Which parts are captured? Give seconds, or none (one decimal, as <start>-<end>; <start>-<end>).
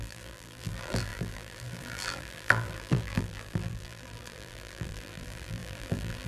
none